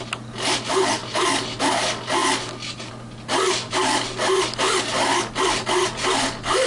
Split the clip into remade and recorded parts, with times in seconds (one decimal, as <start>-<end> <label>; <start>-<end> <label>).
0.0-6.7 recorded